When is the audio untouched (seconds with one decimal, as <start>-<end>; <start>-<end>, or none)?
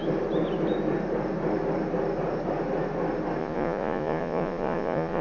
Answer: 0.0-3.4